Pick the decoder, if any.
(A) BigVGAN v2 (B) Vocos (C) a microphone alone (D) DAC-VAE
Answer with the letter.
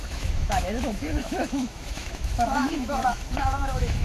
D